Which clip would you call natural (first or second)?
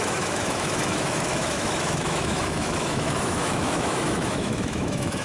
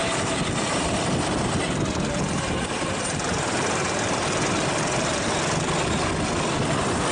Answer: second